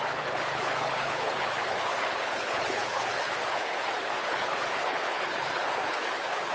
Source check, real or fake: fake